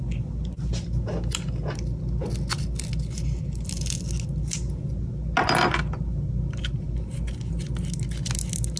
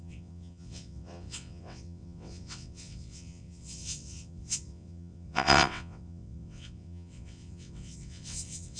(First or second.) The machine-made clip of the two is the second